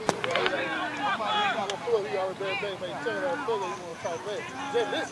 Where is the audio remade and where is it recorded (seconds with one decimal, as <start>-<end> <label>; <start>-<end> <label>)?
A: 0.0-5.1 recorded